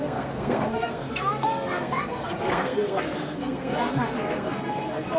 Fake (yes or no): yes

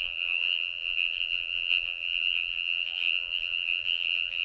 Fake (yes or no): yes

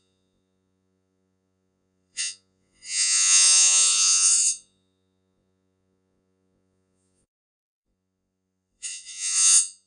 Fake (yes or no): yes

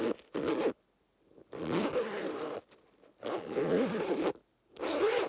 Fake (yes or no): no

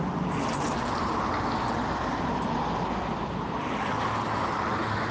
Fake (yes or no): no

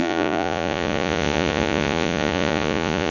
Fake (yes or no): yes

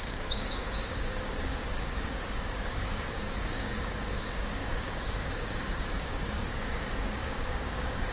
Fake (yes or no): yes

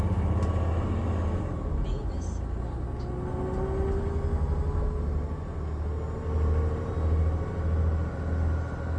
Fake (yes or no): no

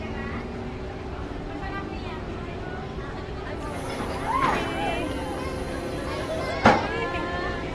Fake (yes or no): no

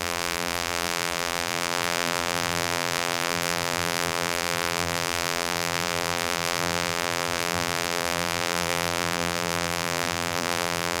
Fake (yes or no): yes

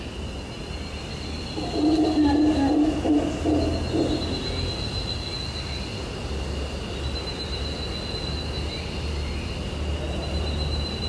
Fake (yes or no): no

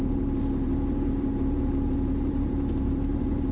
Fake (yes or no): yes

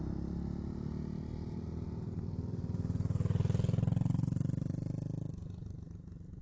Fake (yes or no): no